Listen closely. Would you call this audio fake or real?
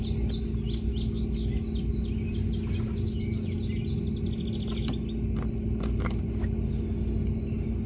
real